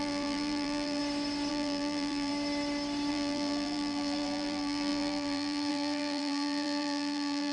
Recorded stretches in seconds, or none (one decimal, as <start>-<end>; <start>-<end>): 1.0-1.5; 2.3-3.1